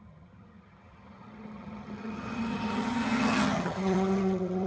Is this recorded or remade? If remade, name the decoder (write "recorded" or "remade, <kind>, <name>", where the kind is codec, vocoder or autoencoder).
remade, vocoder, HiFi-GAN